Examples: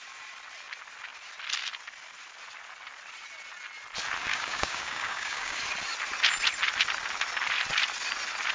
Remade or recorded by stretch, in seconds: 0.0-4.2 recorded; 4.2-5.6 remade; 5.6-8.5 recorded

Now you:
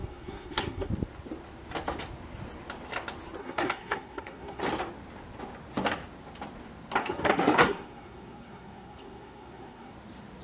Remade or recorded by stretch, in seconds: 0.0-0.9 remade; 0.9-3.4 recorded; 3.4-4.6 remade; 4.6-7.0 recorded; 7.0-9.9 remade; 9.9-10.4 recorded